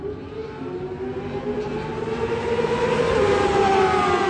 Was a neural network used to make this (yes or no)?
yes